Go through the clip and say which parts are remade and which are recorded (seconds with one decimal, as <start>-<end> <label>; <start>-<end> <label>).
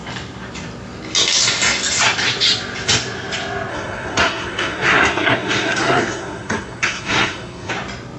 0.0-3.7 recorded; 3.7-7.7 remade; 7.7-8.2 recorded